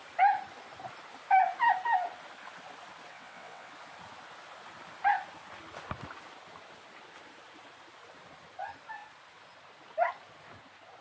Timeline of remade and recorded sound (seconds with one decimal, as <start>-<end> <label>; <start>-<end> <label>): 0.0-3.1 recorded; 3.1-3.7 remade; 3.7-11.0 recorded